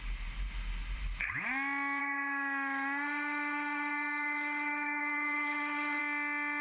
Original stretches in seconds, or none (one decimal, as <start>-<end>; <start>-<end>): 0.0-2.0; 6.0-6.6